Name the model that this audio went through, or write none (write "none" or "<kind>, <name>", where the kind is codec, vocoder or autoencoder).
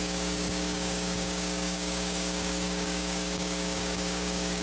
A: codec, DAC